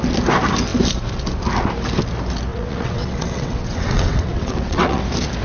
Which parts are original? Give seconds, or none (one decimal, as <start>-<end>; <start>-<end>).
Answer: 0.0-2.5; 5.0-5.4